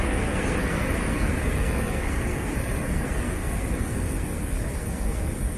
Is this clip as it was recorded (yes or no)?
no